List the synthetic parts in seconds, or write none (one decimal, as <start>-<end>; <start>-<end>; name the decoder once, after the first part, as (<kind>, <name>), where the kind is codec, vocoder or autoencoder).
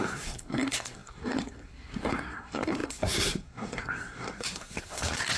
0.0-5.4 (codec, SNAC)